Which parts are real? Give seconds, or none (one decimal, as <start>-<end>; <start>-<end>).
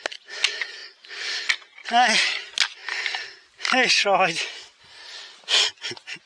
0.0-0.8; 1.4-6.3